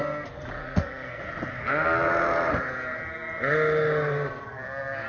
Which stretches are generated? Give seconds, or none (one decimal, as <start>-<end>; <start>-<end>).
0.6-1.2